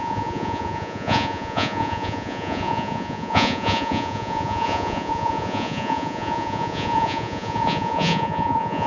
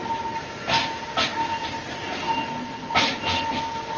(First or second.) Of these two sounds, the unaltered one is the second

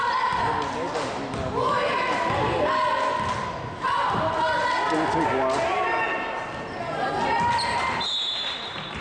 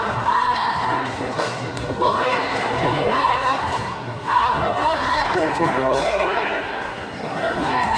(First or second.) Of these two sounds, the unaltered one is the first